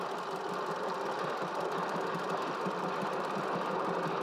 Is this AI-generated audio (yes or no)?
no